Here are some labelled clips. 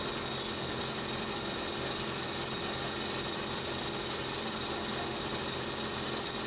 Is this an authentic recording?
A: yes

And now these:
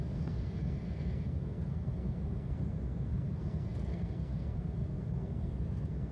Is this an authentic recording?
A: no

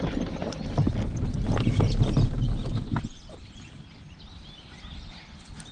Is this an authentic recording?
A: yes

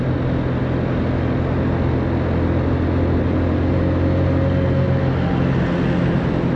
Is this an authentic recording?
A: yes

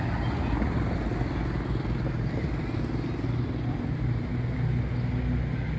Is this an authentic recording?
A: yes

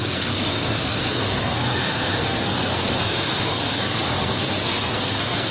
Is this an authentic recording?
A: no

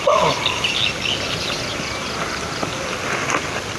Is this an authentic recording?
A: yes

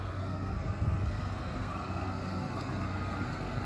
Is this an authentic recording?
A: no